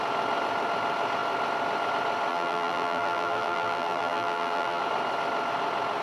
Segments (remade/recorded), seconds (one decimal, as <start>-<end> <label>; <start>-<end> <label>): 0.0-2.3 recorded; 2.3-4.8 remade; 4.8-6.0 recorded

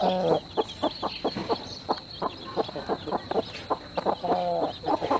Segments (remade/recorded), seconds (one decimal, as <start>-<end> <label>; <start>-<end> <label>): 0.0-1.4 recorded; 1.4-3.3 remade; 3.3-5.2 recorded

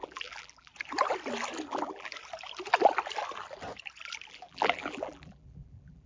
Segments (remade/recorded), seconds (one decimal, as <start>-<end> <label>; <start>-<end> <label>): 0.0-0.7 remade; 0.7-1.7 recorded; 1.7-2.1 remade; 2.1-4.3 recorded; 4.3-6.1 remade

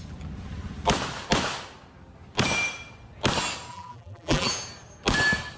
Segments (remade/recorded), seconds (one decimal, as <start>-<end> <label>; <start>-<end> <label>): 0.0-3.7 recorded; 3.7-4.5 remade; 4.5-5.6 recorded

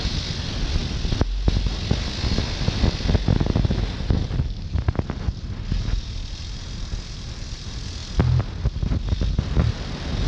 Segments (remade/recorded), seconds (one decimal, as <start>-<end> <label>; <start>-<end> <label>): 0.0-10.3 recorded